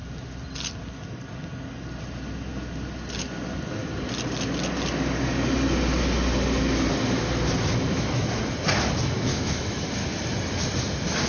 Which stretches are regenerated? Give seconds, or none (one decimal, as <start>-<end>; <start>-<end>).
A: 7.9-8.4; 9.3-9.8